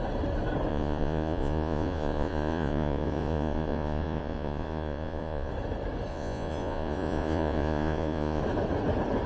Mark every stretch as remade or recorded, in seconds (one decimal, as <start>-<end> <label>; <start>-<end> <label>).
0.0-0.7 recorded; 0.7-5.5 remade; 5.5-6.1 recorded; 6.1-8.4 remade; 8.4-9.3 recorded